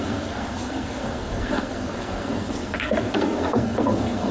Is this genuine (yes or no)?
no